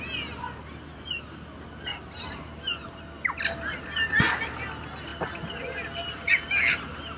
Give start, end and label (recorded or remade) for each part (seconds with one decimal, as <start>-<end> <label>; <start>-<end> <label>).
0.0-1.9 recorded; 1.9-3.0 remade; 3.0-7.2 recorded